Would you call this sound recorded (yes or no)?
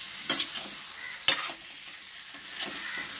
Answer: yes